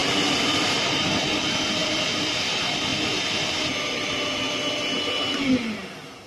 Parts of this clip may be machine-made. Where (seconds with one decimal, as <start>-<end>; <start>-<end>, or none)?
0.0-1.0; 1.8-2.4